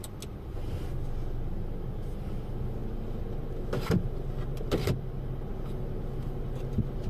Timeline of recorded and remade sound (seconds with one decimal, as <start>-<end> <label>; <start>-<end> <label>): 0.0-7.1 recorded